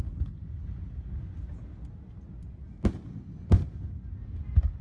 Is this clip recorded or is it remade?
recorded